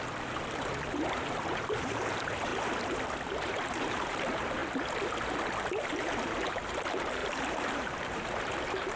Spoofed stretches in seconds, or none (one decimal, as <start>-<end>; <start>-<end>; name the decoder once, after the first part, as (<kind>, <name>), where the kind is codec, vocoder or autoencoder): 0.0-2.5 (vocoder, BigVGAN v2); 3.5-4.6; 5.7-9.0